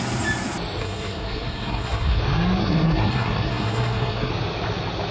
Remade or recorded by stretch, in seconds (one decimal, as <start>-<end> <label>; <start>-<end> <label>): 0.0-0.8 recorded; 0.8-2.2 remade; 2.2-2.6 recorded; 2.6-4.3 remade; 4.3-5.1 recorded